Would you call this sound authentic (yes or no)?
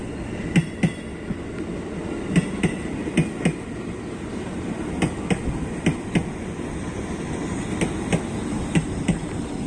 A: yes